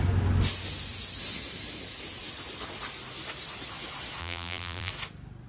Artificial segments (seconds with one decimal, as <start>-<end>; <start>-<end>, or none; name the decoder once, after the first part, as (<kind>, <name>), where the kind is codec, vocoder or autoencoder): 4.2-4.9 (vocoder, BigVGAN v2)